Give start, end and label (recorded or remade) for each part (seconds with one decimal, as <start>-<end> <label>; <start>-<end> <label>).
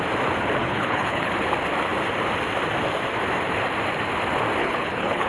0.0-0.6 recorded; 0.6-1.3 remade; 1.3-4.6 recorded; 4.6-5.3 remade